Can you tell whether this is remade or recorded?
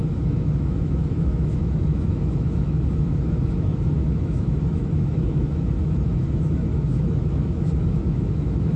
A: remade